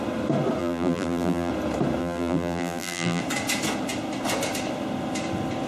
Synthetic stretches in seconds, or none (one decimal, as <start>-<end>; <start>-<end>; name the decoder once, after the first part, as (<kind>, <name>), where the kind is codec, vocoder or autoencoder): 0.6-1.5 (vocoder, BigVGAN v2); 2.0-3.2